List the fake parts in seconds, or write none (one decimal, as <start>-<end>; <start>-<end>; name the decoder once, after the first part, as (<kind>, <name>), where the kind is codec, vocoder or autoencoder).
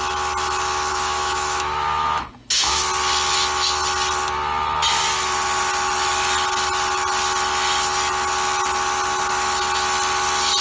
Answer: 0.9-2.8 (autoencoder, DAC-VAE)